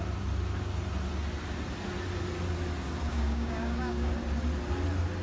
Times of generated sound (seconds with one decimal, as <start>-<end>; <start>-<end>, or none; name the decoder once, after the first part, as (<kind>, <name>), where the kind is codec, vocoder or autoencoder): 3.1-4.1 (codec, DAC)